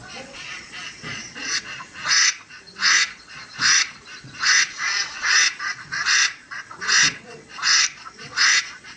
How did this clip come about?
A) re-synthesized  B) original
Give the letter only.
A